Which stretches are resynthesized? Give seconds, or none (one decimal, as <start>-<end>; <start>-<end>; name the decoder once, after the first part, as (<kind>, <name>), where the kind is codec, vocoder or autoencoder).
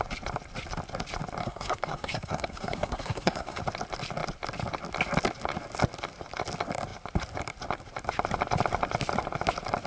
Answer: 1.4-3.6 (codec, SNAC)